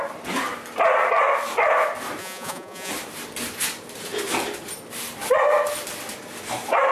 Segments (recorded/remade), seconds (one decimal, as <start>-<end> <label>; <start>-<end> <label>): 0.0-2.2 recorded; 2.2-2.9 remade; 2.9-6.9 recorded